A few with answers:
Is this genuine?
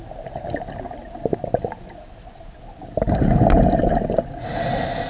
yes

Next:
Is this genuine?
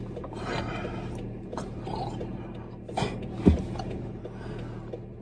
yes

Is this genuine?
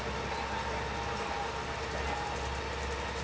yes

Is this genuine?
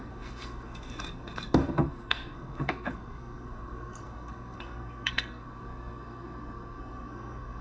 no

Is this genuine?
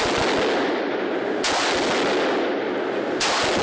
yes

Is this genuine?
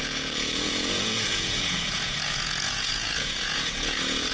no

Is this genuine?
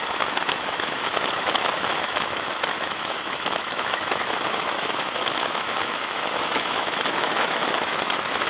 no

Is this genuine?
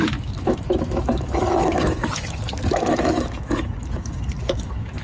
no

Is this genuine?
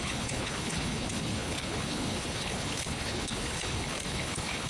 no